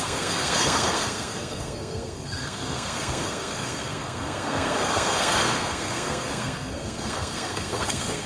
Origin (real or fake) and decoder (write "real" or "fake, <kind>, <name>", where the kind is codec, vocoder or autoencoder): fake, codec, SNAC